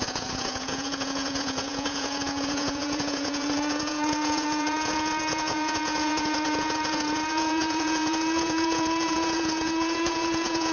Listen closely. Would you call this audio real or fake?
fake